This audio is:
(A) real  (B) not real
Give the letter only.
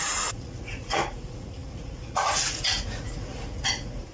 B